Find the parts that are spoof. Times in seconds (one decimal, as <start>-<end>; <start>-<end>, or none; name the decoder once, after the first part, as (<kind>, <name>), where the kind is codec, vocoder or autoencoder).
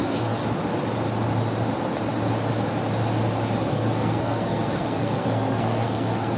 0.0-0.4 (codec, SNAC); 3.6-6.4